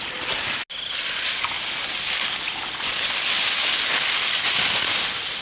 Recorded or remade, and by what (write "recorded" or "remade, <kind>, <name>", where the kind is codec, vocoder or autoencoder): recorded